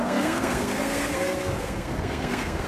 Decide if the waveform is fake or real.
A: fake